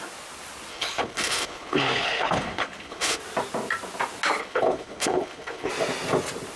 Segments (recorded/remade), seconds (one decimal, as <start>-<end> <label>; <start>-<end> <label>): 0.0-0.7 recorded; 0.7-3.2 remade; 3.2-4.4 recorded; 4.4-5.7 remade; 5.7-6.6 recorded